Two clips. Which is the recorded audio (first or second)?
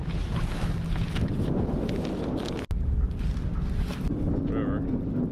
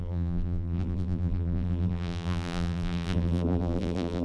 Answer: first